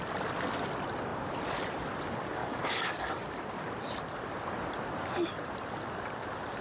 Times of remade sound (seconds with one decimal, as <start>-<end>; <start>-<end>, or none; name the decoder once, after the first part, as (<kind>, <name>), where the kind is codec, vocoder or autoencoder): 2.4-3.2 (codec, DAC)

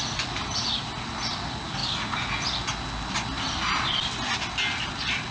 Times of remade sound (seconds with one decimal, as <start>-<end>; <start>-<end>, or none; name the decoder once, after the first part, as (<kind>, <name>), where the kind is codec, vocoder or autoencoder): none

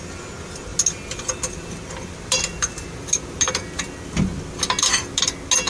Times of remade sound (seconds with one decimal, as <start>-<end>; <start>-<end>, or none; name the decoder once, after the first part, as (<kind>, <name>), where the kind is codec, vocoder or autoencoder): none

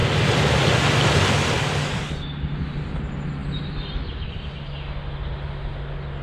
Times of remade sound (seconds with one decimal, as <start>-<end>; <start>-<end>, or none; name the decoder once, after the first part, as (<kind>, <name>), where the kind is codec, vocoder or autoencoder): 1.6-2.1 (codec, DAC)

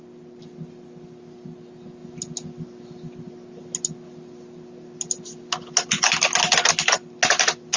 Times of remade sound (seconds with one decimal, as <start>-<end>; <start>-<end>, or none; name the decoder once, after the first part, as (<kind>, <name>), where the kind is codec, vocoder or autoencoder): none